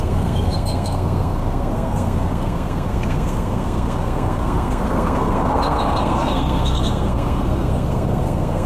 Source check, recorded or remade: remade